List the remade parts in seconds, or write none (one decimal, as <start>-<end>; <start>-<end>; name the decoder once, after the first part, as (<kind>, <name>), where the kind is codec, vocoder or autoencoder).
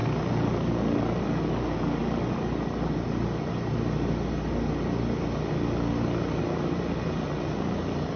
none